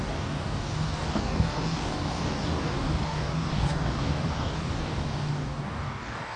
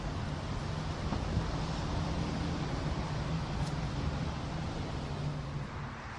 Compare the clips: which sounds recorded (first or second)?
second